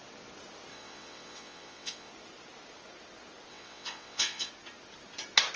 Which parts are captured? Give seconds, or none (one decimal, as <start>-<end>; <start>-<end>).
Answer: 0.0-0.7; 2.1-3.5; 4.5-5.6